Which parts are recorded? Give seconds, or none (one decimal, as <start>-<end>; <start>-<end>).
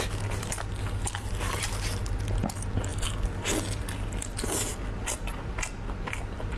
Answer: 0.0-6.6